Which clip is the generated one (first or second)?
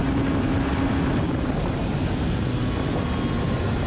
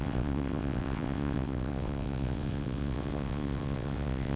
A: second